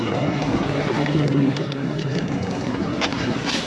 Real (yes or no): no